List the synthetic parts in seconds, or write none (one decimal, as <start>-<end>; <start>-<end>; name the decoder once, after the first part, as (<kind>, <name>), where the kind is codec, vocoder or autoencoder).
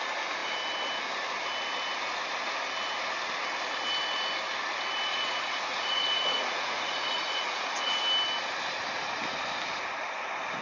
5.1-8.0 (vocoder, Vocos)